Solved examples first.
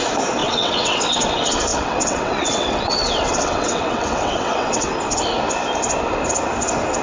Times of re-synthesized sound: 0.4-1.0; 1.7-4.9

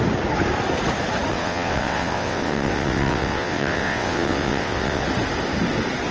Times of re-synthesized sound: 1.3-5.0